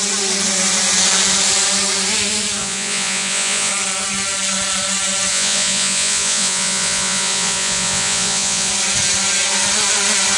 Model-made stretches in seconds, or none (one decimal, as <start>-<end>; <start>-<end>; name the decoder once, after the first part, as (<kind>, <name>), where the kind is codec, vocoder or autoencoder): 2.6-3.7 (vocoder, Vocos); 5.3-8.7

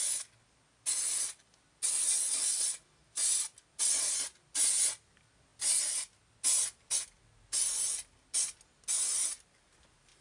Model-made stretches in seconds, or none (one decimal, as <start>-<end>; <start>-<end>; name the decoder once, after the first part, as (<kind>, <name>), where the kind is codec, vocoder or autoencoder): none

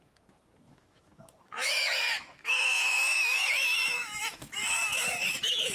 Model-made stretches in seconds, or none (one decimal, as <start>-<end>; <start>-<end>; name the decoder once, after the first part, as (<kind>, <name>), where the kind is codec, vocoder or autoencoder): 0.0-5.7 (autoencoder, DAC-VAE)

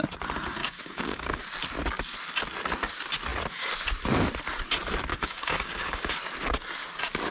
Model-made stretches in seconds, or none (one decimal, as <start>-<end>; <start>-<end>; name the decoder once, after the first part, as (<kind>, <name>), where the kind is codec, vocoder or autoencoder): 0.6-1.4 (codec, DAC); 5.1-6.1

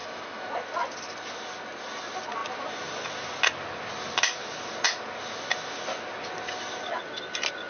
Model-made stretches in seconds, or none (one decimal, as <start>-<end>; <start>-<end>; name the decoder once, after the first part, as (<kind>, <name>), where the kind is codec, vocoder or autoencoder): 0.0-0.5 (autoencoder, DAC-VAE)

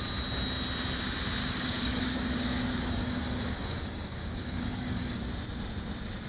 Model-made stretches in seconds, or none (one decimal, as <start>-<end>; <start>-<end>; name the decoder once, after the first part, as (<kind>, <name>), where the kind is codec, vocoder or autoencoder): 1.4-5.2 (codec, DAC)